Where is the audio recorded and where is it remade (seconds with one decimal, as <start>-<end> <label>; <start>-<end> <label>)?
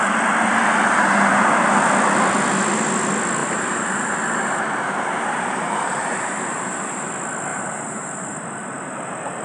0.0-3.4 recorded; 3.4-7.1 remade; 7.1-7.5 recorded; 7.5-8.4 remade; 8.4-9.4 recorded